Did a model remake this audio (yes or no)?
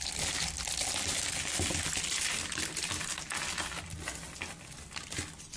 no